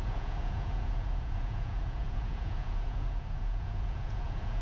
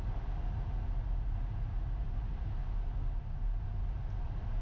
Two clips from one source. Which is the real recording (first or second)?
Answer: second